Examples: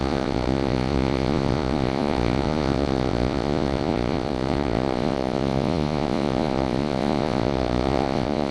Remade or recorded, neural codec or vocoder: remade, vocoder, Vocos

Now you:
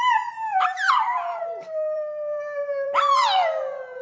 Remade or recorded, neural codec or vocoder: remade, vocoder, BigVGAN v2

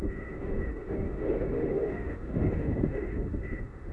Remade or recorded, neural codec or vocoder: remade, autoencoder, DAC-VAE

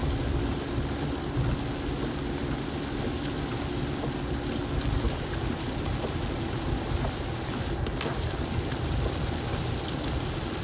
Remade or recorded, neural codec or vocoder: recorded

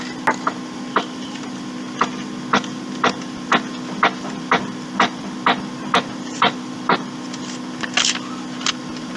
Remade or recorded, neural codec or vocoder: recorded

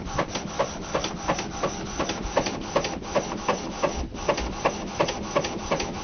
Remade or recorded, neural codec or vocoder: recorded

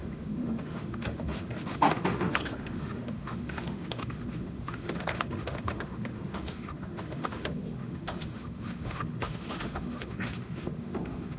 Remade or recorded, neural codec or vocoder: remade, autoencoder, DAC-VAE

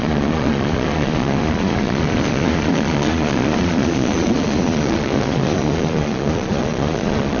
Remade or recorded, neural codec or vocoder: remade, vocoder, Vocos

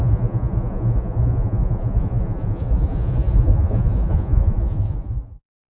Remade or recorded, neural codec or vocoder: remade, vocoder, Vocos